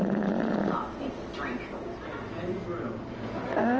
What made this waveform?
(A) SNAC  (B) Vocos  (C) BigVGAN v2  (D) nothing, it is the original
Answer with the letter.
D